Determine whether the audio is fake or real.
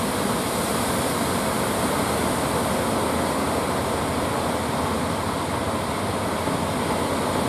real